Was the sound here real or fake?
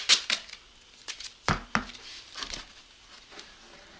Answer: real